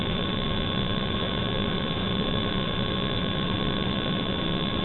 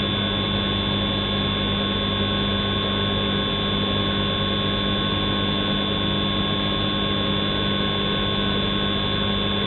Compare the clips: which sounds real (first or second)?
second